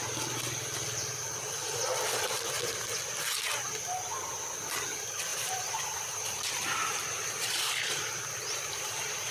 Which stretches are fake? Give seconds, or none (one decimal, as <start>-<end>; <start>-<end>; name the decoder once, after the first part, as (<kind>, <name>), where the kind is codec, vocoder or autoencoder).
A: 5.3-9.3 (vocoder, BigVGAN v2)